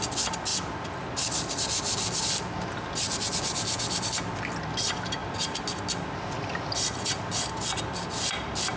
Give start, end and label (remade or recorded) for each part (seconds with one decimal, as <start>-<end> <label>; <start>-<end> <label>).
0.0-8.8 recorded